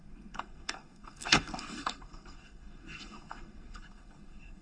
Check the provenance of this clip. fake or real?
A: fake